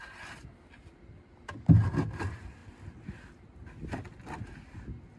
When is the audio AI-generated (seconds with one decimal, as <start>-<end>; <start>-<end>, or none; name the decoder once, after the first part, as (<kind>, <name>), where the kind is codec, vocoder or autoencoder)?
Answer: none